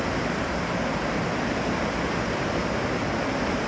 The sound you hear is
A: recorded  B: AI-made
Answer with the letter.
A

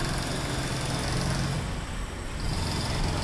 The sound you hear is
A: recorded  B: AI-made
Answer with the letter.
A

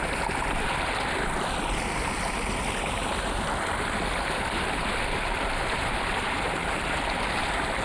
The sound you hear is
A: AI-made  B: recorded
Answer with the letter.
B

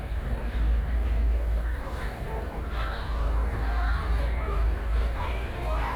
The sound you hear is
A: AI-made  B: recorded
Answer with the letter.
A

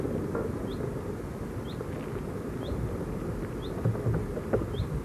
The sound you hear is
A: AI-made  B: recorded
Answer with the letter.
B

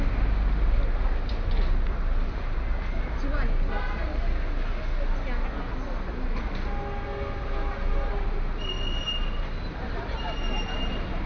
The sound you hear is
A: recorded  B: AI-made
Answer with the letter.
A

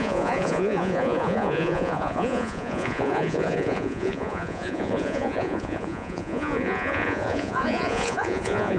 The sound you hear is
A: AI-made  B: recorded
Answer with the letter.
A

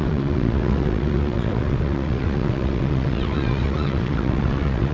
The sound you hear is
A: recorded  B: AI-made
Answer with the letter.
B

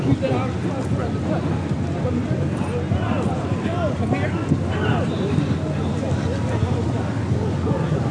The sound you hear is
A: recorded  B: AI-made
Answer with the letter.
A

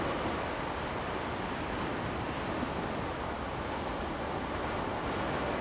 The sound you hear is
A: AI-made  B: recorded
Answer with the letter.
B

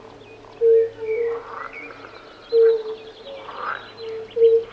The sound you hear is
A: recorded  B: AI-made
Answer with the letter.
A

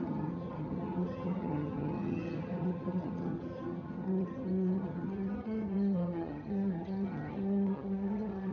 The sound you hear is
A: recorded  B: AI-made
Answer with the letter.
B